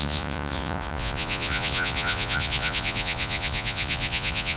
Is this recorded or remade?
remade